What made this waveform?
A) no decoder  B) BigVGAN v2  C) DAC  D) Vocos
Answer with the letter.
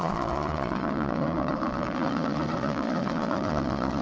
D